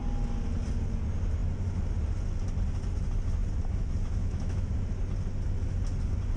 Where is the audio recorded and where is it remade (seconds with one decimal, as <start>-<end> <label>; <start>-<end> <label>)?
0.0-4.2 recorded; 4.2-4.7 remade; 4.7-6.4 recorded